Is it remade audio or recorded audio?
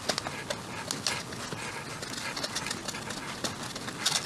recorded